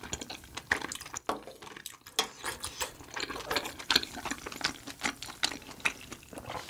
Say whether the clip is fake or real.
real